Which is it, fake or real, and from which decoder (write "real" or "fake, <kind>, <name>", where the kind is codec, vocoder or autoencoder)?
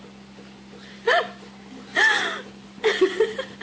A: real